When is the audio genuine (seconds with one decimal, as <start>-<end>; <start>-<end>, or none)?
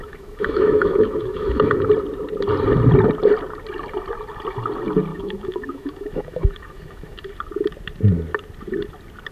1.9-5.1; 7.3-9.3